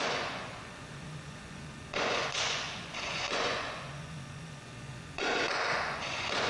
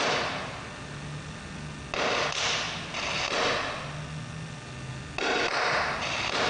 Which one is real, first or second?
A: second